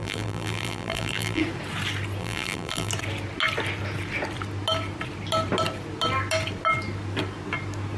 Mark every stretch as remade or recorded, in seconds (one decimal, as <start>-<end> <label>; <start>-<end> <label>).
0.0-1.4 remade; 1.4-2.2 recorded; 2.2-2.9 remade; 2.9-8.0 recorded